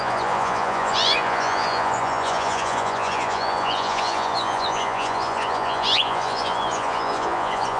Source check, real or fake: fake